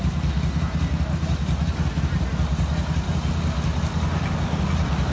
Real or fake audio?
real